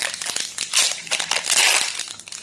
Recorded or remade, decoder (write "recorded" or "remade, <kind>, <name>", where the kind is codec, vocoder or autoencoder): recorded